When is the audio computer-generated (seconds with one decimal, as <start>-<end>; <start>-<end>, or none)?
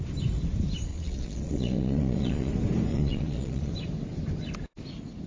0.9-2.5; 2.9-3.7